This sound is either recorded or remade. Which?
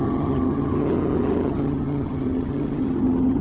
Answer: remade